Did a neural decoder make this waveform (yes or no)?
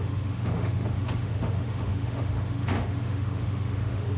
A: yes